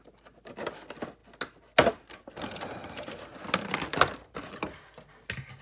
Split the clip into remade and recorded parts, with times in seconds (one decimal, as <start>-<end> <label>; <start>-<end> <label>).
0.0-5.6 recorded